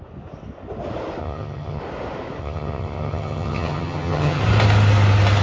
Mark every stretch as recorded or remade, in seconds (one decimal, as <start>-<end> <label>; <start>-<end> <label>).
0.0-1.2 recorded; 1.2-1.8 remade; 1.8-2.4 recorded; 2.4-4.4 remade; 4.4-5.4 recorded

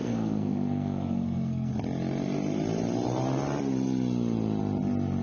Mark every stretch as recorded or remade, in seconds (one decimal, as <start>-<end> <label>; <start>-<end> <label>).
0.0-1.7 remade; 1.7-5.2 recorded

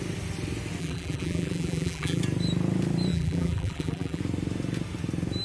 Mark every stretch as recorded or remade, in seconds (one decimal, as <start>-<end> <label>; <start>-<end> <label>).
0.0-0.8 recorded; 0.8-2.2 remade; 2.2-3.1 recorded; 3.1-4.2 remade; 4.2-5.4 recorded

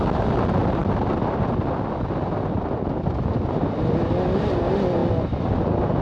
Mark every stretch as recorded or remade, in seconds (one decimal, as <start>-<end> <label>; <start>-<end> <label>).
0.0-6.0 recorded

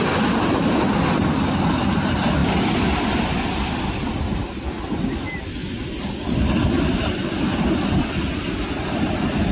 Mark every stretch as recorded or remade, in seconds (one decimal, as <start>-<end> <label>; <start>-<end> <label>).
0.0-9.5 recorded